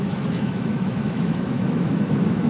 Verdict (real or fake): fake